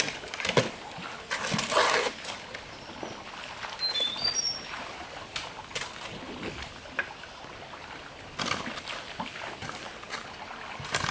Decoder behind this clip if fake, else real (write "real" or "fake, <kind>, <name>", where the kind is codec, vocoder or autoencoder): real